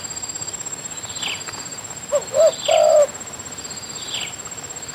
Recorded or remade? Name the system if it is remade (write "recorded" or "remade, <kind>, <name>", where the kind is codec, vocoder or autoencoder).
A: recorded